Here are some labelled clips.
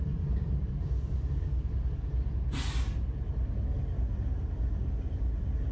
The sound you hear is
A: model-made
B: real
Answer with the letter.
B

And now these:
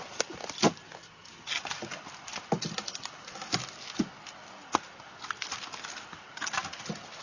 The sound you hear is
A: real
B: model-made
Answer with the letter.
A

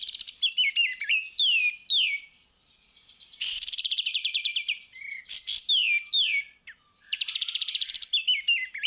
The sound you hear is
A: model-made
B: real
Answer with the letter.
B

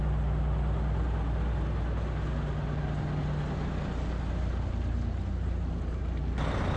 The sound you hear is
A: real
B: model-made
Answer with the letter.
A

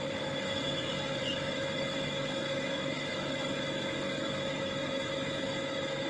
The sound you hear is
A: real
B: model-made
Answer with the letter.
B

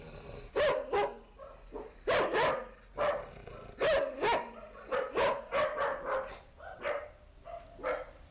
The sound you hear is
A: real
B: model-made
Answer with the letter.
A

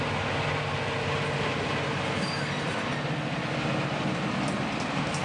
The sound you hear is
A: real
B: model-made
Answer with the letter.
A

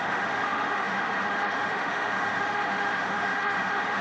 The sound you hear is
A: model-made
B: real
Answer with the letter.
A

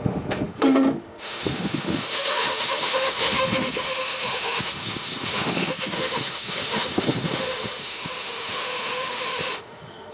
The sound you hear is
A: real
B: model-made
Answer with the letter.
B